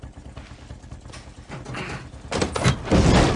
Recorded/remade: recorded